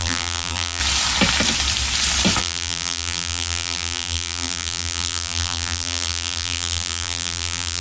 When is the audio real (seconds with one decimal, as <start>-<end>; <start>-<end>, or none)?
0.8-2.4

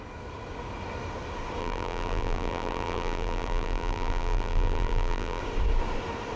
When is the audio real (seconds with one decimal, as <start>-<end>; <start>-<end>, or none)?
0.0-1.6; 5.4-6.4

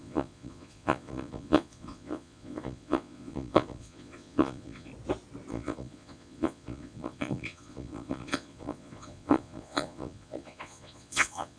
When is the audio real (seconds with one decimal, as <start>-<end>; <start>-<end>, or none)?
4.9-5.5

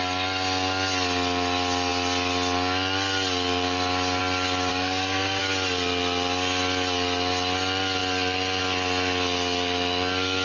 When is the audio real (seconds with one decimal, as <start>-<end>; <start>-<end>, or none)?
0.0-4.7; 5.4-10.4

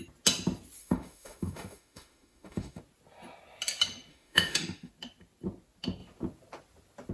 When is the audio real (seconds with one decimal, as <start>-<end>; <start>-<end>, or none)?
0.0-0.8; 2.8-4.1; 4.9-7.1